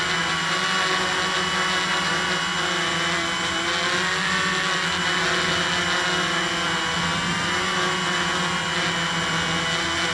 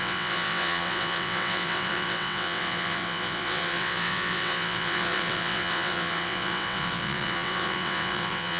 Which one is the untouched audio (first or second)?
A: first